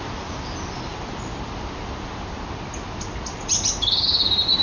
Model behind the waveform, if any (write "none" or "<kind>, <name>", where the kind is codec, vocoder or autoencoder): none